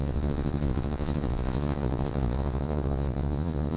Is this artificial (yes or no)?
yes